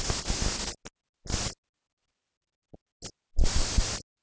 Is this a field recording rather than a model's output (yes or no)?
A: yes